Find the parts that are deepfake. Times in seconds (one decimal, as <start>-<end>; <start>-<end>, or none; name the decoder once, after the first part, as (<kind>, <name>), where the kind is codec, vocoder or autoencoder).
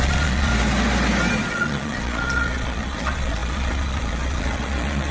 0.0-0.5 (vocoder, Vocos); 1.5-5.1